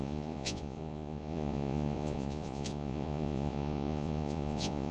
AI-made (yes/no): yes